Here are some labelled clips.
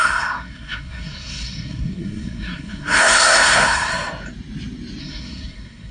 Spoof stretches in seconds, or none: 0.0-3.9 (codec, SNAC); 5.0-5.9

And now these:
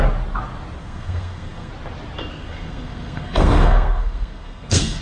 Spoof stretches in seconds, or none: 0.8-1.7 (codec, SNAC); 2.3-5.0

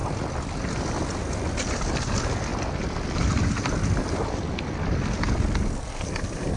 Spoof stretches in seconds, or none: none

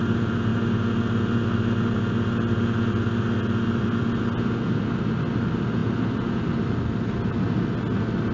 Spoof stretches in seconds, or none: none

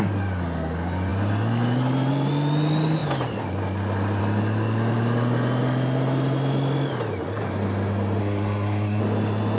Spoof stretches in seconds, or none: 8.2-9.0 (codec, SNAC)

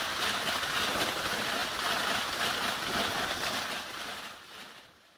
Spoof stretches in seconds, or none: none

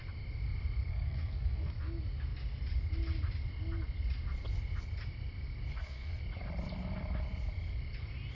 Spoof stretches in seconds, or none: 0.9-1.7 (codec, SNAC); 5.7-6.2

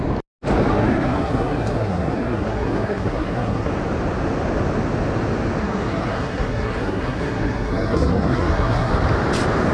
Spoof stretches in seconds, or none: 0.7-3.7 (codec, SNAC); 5.6-8.9